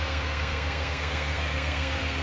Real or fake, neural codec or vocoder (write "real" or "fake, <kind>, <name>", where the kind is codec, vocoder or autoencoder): fake, codec, SNAC